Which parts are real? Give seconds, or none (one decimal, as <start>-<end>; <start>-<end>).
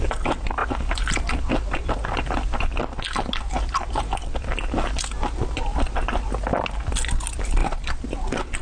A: 0.0-8.6